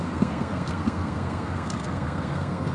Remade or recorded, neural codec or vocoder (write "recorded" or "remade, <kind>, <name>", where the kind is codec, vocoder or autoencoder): remade, codec, SNAC